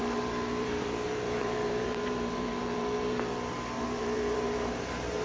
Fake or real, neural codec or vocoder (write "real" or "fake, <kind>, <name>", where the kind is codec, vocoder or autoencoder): fake, vocoder, BigVGAN v2